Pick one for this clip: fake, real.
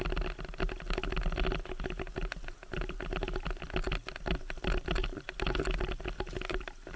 real